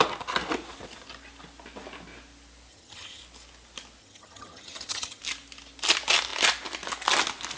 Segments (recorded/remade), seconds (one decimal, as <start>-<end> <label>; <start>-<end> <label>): 0.0-2.7 recorded; 2.7-3.2 remade; 3.2-4.0 recorded; 4.0-5.2 remade; 5.2-7.6 recorded